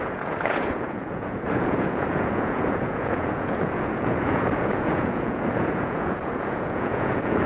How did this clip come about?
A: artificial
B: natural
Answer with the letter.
A